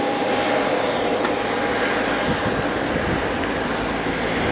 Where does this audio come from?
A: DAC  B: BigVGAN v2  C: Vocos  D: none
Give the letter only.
D